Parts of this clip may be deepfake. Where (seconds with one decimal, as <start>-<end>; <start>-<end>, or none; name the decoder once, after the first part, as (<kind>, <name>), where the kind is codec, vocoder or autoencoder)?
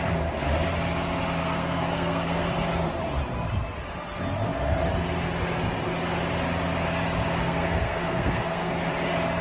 1.4-2.5 (codec, SNAC); 7.3-8.7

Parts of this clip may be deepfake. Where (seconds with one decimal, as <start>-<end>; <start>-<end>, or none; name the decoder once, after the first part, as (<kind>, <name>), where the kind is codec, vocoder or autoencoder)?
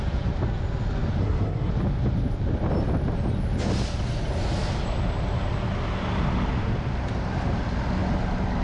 1.2-1.7 (codec, SNAC)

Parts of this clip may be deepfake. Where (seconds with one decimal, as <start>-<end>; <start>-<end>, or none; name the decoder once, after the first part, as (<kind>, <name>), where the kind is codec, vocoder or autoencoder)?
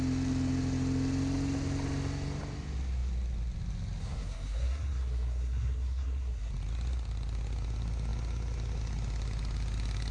4.0-6.5 (codec, SNAC)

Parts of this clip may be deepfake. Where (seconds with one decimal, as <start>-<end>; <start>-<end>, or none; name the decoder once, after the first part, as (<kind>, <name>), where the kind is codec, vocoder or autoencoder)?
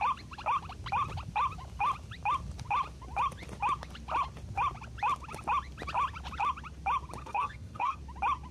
7.2-8.0 (codec, SNAC)